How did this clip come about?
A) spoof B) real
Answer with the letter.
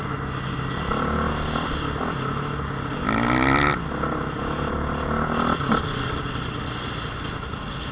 B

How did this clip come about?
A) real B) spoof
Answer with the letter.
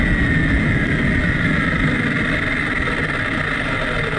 A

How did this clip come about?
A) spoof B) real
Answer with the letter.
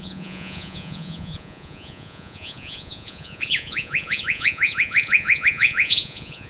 A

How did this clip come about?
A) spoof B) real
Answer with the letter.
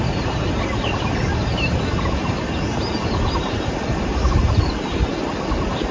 B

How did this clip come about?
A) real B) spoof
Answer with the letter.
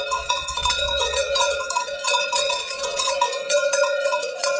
B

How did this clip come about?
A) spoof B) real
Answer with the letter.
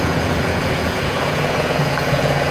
A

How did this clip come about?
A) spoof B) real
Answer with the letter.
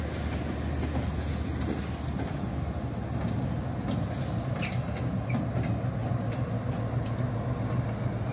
B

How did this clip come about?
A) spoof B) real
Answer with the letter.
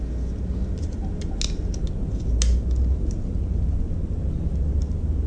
B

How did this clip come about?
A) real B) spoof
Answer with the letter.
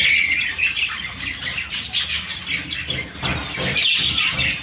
A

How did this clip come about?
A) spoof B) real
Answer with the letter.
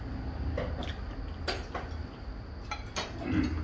B